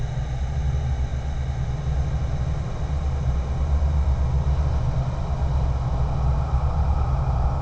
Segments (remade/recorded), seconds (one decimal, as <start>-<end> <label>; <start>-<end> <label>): 0.0-7.6 recorded